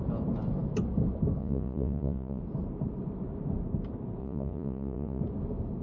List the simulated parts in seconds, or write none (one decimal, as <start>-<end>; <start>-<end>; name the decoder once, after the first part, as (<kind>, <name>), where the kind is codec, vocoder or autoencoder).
1.4-2.4 (vocoder, Vocos); 4.2-5.2